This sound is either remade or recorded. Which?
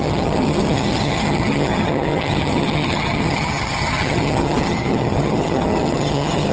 remade